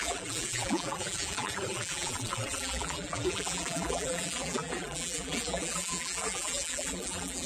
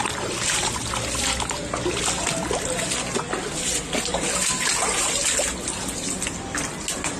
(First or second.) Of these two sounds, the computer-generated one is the first